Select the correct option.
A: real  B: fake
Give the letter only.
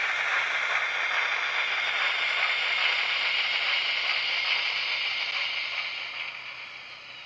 A